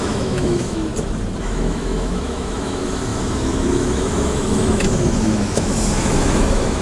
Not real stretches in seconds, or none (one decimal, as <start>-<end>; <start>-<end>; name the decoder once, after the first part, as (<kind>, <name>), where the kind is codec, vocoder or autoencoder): 0.0-0.9 (autoencoder, DAC-VAE); 1.4-6.8

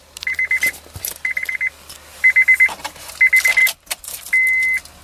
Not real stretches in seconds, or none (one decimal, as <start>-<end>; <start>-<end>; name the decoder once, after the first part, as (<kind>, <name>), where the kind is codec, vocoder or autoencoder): 2.1-2.9 (vocoder, BigVGAN v2); 3.6-4.3